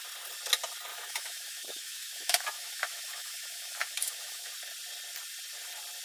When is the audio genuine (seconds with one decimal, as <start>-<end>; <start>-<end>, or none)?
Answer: 0.0-0.9; 4.5-6.0